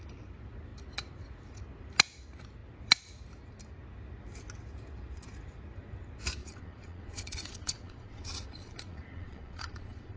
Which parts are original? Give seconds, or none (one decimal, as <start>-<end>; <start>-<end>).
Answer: 0.0-6.4

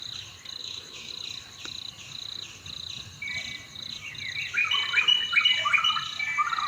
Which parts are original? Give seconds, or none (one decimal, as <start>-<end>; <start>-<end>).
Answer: 0.0-0.6; 1.1-6.7

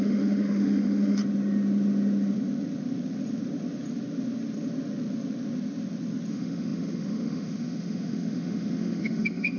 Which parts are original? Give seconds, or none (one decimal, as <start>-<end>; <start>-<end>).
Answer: 1.2-6.3